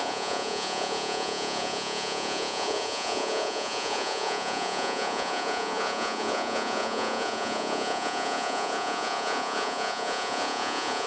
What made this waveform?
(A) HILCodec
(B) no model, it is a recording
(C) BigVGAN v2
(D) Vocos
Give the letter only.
D